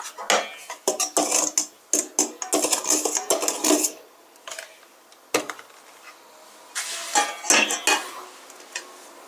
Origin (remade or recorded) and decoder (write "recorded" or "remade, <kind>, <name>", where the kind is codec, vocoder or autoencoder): recorded